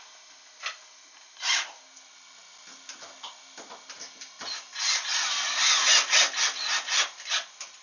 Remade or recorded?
recorded